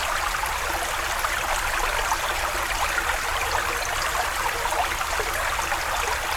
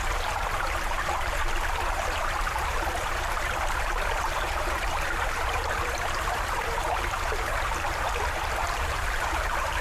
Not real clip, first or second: second